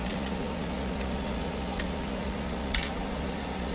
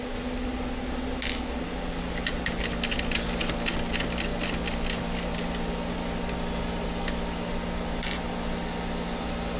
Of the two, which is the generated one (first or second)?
first